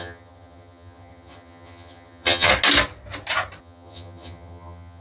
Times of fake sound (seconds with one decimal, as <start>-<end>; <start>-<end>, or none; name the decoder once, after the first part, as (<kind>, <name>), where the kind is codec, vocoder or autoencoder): 0.0-2.5 (vocoder, HiFi-GAN); 3.6-5.0